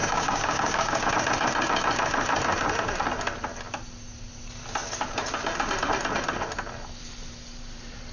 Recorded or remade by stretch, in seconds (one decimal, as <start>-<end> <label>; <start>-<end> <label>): 0.0-1.1 remade; 1.1-8.1 recorded